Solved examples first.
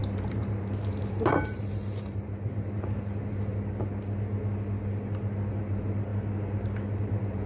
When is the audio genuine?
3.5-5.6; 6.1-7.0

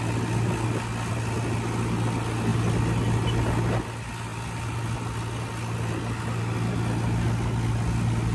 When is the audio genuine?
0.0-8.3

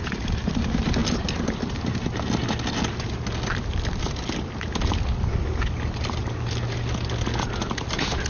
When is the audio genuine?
0.0-8.3

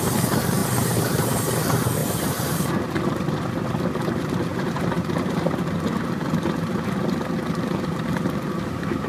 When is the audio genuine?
0.0-0.6; 1.5-2.0; 2.9-4.5; 5.5-9.1